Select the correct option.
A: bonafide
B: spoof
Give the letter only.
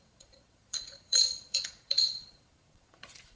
B